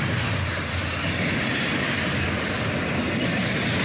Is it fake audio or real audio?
real